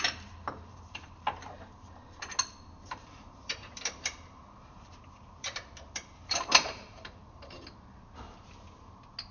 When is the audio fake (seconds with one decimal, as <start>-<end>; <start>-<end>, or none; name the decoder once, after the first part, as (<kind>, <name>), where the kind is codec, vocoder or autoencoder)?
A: 0.7-1.5 (vocoder, BigVGAN v2); 2.8-7.2